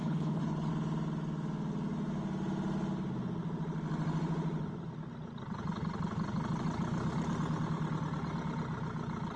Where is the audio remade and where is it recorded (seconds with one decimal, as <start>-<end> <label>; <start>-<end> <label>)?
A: 0.0-0.7 remade; 0.7-9.4 recorded